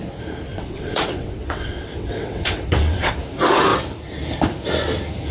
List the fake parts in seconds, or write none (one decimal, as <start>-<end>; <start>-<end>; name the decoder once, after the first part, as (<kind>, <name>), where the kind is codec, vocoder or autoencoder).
0.5-3.1 (vocoder, WaveNeXt)